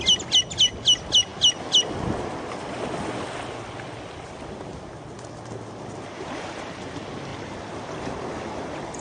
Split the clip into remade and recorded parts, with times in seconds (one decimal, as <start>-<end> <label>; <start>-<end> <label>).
0.0-9.0 recorded